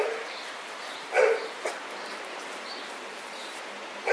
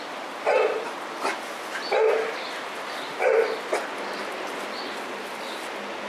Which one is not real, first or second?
first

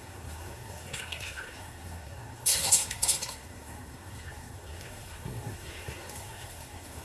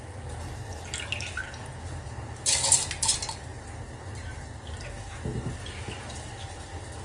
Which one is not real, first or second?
first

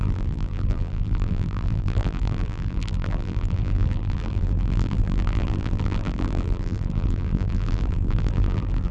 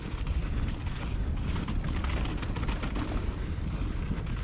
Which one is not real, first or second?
first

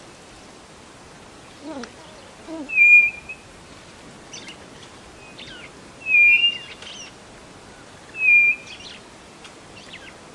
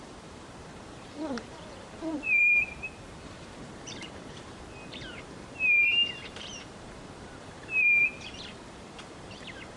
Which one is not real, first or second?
second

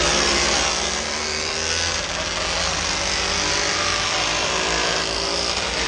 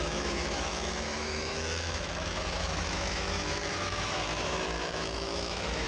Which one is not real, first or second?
second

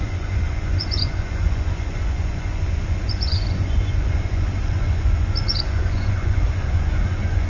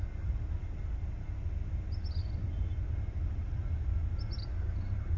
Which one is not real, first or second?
first